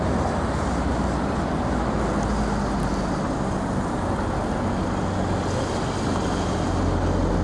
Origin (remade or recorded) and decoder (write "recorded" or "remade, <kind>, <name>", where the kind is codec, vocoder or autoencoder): recorded